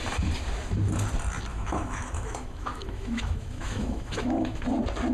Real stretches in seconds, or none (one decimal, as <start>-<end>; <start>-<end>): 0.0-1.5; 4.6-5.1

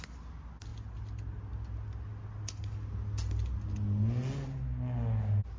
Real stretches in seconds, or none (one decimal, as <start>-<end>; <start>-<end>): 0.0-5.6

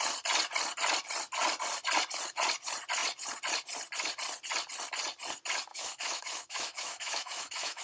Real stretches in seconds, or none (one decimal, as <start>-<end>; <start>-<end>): 0.0-5.7